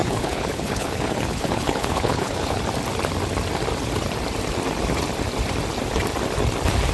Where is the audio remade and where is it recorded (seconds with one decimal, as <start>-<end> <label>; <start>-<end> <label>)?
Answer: 0.0-2.6 remade; 2.6-6.9 recorded